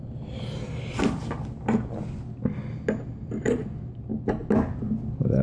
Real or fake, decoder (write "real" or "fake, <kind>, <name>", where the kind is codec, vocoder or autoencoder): real